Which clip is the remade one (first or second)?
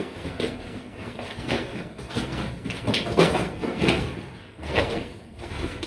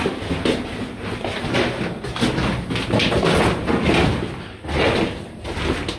first